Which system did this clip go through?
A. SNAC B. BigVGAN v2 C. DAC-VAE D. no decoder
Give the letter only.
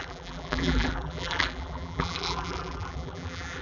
B